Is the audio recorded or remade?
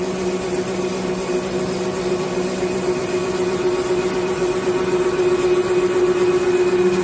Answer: recorded